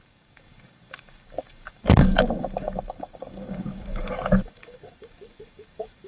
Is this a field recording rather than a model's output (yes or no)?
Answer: no